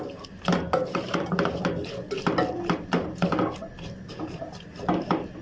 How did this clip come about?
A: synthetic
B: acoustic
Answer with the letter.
B